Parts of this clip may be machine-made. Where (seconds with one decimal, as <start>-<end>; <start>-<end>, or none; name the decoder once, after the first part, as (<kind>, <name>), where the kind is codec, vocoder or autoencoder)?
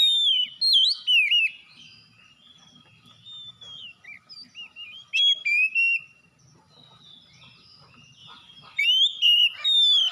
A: none